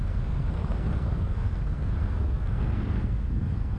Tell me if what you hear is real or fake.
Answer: fake